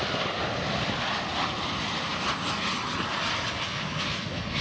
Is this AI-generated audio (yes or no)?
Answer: no